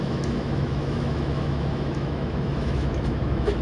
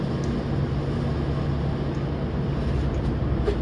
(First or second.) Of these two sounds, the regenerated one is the first